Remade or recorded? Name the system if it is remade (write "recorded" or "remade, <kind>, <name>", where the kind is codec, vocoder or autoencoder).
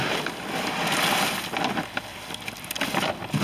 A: recorded